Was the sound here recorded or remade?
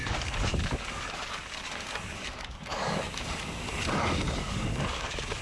remade